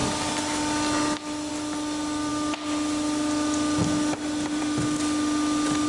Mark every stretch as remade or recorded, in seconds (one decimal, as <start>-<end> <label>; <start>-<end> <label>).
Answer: 0.0-5.9 recorded